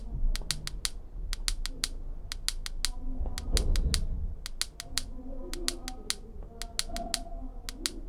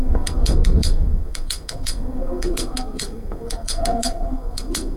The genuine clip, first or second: first